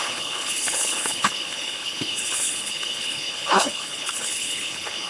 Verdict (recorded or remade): remade